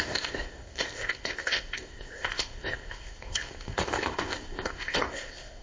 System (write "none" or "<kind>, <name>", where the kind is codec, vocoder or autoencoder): codec, ZipCodec